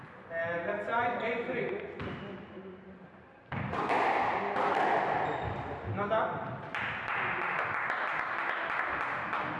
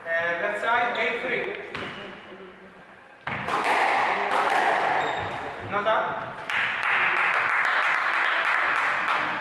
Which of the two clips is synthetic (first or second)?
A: first